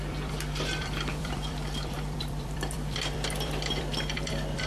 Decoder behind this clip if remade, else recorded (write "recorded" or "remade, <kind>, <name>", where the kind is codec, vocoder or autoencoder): remade, vocoder, BigVGAN v2